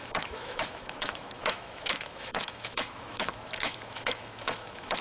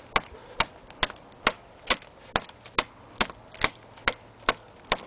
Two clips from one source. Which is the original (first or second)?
second